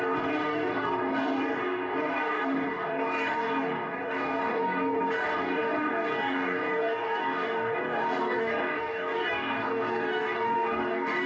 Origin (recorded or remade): remade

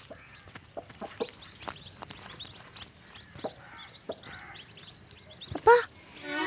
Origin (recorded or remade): recorded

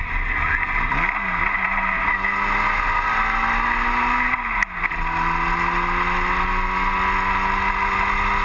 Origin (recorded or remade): recorded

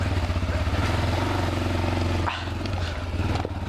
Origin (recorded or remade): recorded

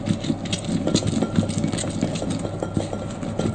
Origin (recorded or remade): recorded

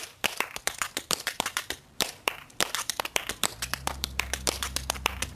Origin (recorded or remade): remade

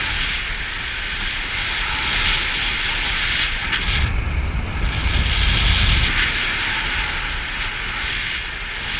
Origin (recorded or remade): recorded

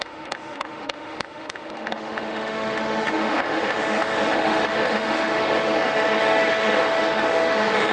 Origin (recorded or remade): remade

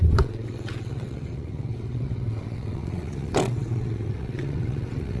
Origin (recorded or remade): remade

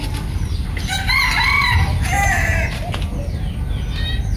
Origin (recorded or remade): recorded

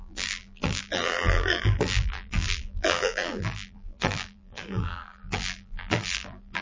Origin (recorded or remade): remade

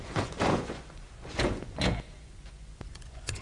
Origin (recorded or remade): remade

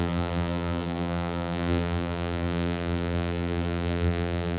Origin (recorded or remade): remade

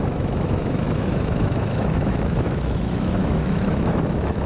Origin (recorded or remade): remade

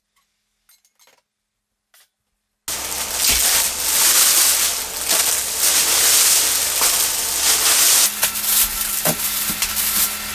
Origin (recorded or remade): recorded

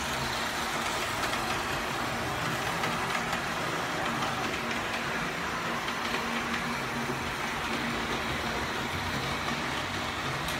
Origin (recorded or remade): recorded